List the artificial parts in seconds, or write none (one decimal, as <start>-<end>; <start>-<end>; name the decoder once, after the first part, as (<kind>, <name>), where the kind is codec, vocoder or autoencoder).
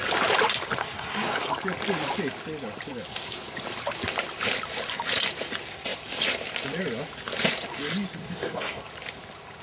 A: 0.8-1.5 (codec, SNAC); 8.2-8.8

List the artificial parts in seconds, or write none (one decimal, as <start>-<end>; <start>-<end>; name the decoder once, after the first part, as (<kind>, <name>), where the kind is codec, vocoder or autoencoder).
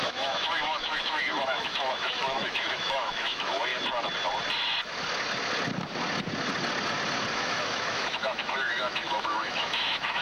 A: 0.0-3.7 (autoencoder, DAC-VAE); 7.3-10.2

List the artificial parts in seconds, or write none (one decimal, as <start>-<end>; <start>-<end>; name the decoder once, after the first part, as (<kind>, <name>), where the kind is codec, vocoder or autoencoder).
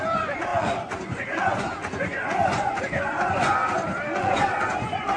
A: 0.0-3.6 (vocoder, Vocos); 4.2-5.2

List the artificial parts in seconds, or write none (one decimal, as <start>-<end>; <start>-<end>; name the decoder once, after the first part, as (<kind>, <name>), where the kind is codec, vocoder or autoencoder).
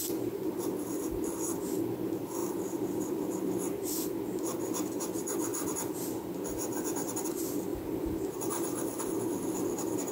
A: 2.4-3.3 (vocoder, BigVGAN v2); 5.5-6.3; 7.7-8.3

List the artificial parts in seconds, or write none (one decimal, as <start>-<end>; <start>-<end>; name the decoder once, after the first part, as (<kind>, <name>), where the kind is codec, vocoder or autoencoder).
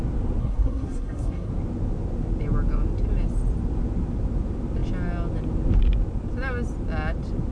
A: 0.4-1.5 (codec, SNAC)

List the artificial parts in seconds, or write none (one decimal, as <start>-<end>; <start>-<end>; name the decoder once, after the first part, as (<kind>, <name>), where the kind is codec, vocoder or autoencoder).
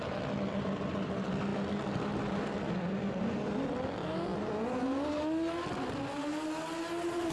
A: none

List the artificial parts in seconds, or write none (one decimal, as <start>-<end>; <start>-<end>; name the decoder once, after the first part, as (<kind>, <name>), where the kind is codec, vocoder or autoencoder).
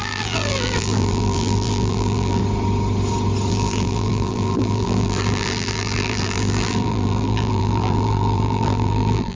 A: 0.0-2.4 (vocoder, BigVGAN v2); 3.5-9.3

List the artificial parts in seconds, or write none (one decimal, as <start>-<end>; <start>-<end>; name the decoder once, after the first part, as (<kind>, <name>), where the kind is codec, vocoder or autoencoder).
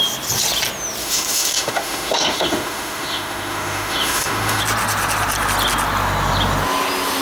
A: 1.0-4.6 (autoencoder, DAC-VAE)